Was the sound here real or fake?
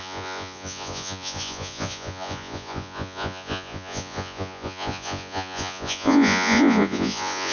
fake